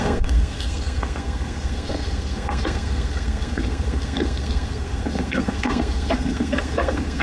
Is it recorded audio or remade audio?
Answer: remade